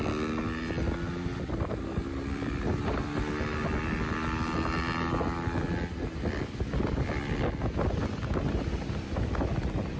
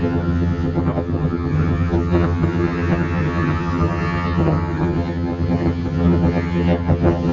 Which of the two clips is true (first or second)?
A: first